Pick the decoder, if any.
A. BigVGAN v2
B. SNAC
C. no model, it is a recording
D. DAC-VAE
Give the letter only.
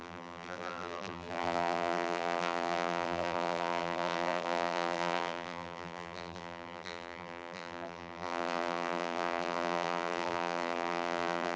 A